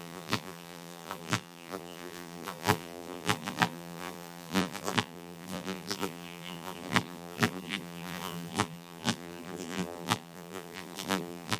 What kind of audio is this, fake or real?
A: fake